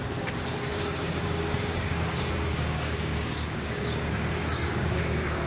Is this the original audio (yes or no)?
no